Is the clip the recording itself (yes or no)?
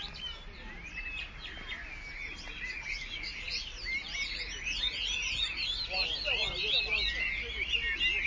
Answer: yes